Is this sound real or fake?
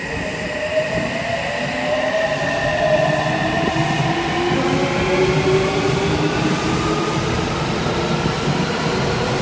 real